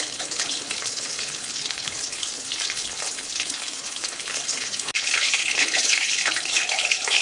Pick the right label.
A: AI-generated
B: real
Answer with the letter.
A